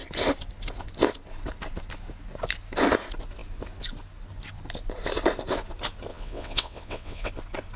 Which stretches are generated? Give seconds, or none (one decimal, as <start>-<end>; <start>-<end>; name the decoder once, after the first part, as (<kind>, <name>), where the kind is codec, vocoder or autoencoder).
6.1-7.3 (vocoder, WaveNeXt)